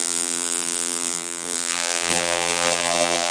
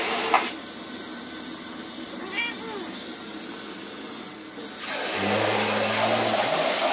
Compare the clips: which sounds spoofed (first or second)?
first